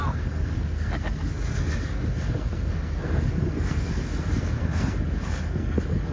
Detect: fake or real fake